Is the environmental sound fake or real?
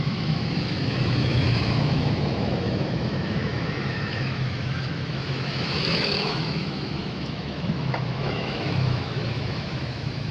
fake